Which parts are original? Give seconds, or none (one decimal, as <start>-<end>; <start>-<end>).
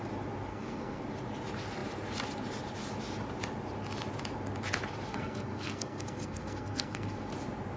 0.0-0.5; 1.0-5.1; 7.3-7.8